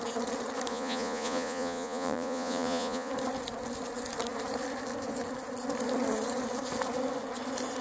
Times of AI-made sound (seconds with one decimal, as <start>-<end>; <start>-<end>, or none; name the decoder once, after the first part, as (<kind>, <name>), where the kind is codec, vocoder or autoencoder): 0.7-3.1 (vocoder, Vocos)